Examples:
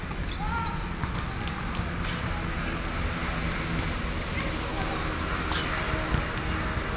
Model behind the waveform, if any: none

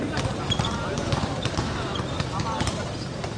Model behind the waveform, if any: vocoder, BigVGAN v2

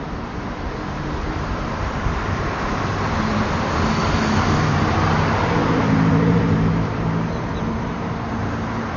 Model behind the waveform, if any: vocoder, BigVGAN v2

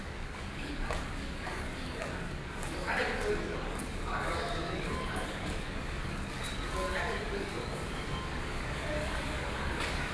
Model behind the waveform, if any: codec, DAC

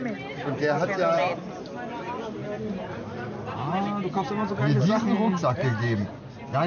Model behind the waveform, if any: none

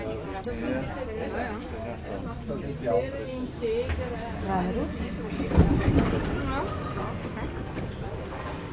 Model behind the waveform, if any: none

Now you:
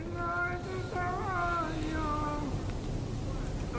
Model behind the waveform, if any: none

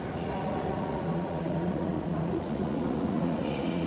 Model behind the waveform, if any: vocoder, Vocos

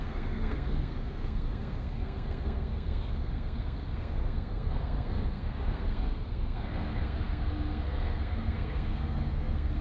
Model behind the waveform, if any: codec, SNAC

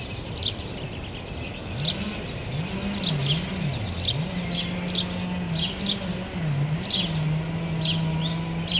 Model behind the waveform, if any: none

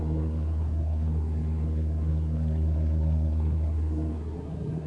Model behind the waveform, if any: codec, SNAC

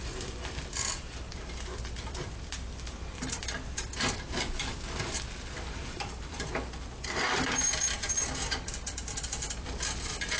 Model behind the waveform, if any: vocoder, BigVGAN v2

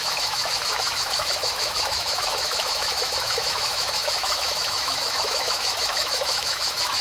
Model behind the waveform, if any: autoencoder, DAC-VAE